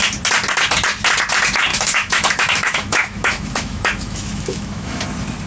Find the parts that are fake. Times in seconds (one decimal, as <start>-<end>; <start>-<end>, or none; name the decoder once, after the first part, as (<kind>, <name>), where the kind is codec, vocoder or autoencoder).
1.7-5.0 (autoencoder, DAC-VAE)